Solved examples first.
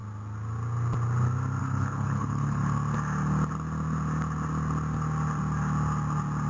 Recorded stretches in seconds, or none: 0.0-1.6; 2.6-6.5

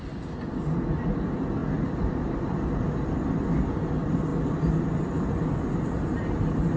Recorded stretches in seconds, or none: 0.0-6.8

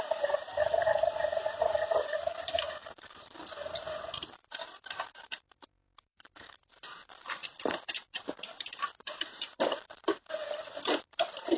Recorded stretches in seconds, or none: 7.4-8.1

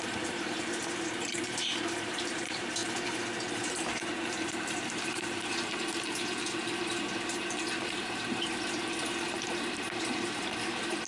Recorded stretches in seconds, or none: none